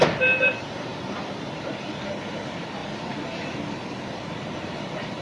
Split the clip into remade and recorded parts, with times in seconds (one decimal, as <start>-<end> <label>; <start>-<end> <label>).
0.0-2.8 remade; 2.8-4.1 recorded; 4.1-5.2 remade